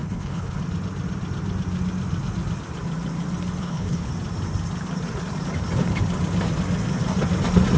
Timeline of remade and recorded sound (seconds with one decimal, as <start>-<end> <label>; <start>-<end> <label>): 0.0-0.6 remade; 0.6-3.6 recorded; 3.6-4.1 remade; 4.1-7.8 recorded